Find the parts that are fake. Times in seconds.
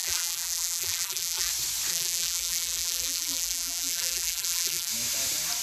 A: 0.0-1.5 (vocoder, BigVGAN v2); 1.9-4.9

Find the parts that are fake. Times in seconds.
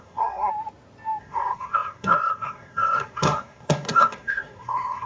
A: 0.0-0.5 (codec, SNAC); 1.2-5.1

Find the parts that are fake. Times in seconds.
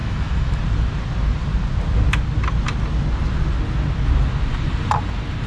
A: 0.0-0.6 (autoencoder, DAC-VAE)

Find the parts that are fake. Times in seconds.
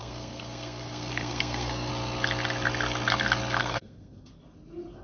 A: 0.0-1.9 (codec, SNAC); 3.6-4.3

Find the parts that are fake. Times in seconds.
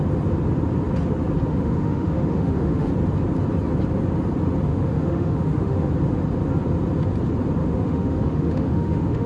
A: 1.5-2.9 (autoencoder, DAC-VAE); 4.7-5.9; 7.6-9.3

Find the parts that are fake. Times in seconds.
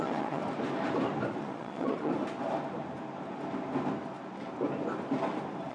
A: 0.0-0.4 (vocoder, Vocos); 1.4-2.1